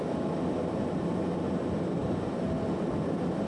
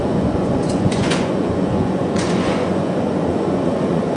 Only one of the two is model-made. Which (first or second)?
second